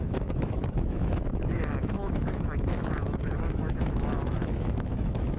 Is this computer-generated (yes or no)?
yes